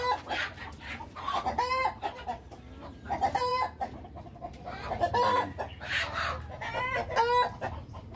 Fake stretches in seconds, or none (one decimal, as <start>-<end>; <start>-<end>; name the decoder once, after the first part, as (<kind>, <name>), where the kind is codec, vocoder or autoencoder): none